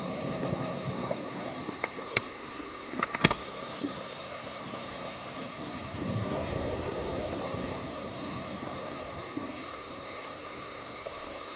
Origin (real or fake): fake